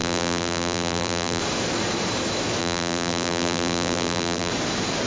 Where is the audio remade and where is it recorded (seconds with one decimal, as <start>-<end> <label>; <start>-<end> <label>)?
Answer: 0.0-1.4 remade; 1.4-2.6 recorded; 2.6-4.5 remade; 4.5-5.1 recorded